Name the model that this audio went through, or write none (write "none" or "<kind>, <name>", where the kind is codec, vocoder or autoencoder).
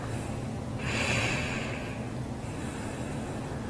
none